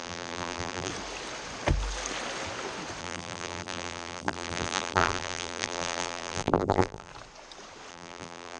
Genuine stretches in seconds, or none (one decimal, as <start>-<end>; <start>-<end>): 0.9-3.0; 7.1-7.9